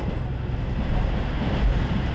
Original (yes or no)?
yes